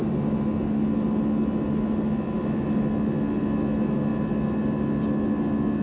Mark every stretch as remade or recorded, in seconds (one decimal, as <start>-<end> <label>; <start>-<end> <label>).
0.0-5.8 recorded